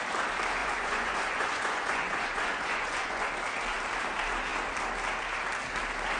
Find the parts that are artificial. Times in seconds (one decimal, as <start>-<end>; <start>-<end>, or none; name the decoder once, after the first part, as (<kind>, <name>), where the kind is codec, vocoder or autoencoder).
0.6-3.3 (vocoder, Vocos)